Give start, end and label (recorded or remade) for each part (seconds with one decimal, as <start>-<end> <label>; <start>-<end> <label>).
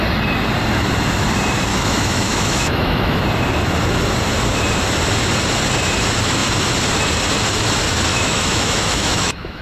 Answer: 0.0-1.7 recorded; 1.7-3.2 remade; 3.2-8.1 recorded; 8.1-9.6 remade